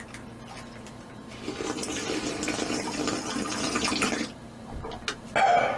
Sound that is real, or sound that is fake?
real